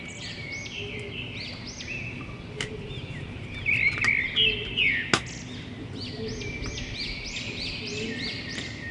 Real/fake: real